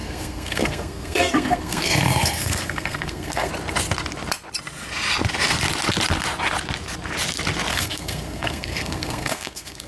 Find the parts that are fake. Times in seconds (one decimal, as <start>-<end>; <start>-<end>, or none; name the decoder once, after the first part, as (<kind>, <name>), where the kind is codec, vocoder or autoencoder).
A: 0.0-3.5 (codec, SNAC); 7.7-9.9